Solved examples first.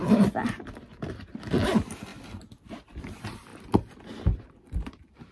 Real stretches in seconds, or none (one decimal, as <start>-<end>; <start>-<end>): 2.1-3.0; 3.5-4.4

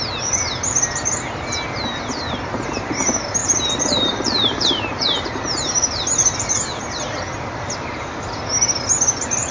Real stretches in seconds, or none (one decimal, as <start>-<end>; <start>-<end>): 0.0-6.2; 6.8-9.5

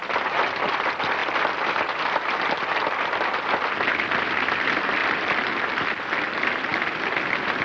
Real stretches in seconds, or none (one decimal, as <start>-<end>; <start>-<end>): 0.0-7.6

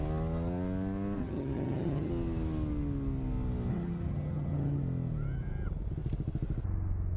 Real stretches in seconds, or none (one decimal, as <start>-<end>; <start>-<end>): 0.0-1.2; 2.1-3.7; 4.8-7.2

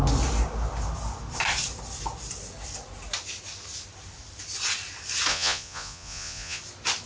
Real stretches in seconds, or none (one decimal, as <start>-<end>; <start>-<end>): 0.0-5.3; 6.6-7.1